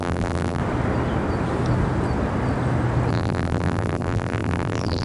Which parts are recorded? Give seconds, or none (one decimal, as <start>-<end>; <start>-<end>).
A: 0.6-3.1